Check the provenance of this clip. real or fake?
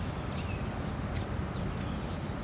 real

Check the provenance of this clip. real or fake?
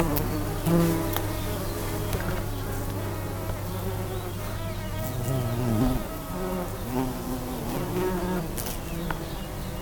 real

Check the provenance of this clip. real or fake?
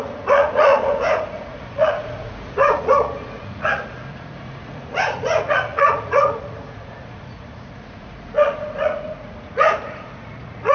fake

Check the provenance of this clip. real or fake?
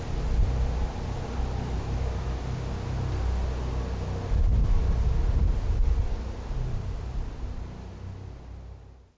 real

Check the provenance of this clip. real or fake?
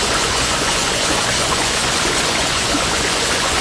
fake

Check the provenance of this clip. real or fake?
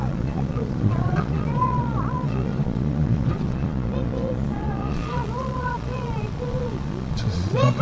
fake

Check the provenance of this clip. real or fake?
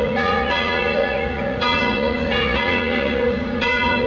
fake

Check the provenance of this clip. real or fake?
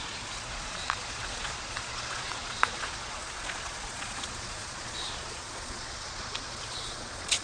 fake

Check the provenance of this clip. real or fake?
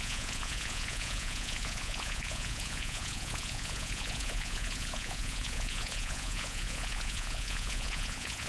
fake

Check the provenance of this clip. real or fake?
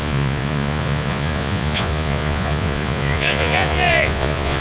fake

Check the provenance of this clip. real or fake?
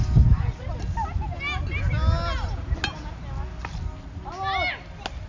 real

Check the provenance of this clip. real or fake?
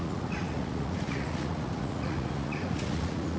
fake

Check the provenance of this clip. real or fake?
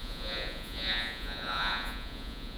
fake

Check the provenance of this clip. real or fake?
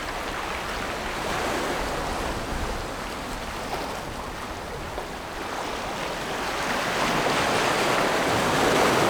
real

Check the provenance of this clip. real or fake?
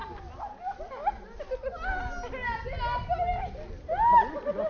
real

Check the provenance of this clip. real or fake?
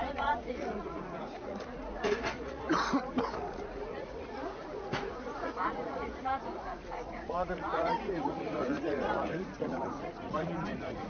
fake